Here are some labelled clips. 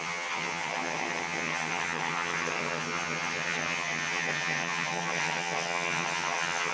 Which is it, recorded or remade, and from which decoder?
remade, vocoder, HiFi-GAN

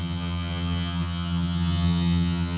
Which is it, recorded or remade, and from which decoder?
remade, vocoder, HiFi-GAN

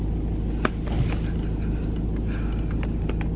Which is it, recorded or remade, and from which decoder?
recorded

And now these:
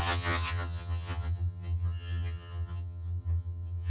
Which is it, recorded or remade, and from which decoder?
remade, vocoder, HiFi-GAN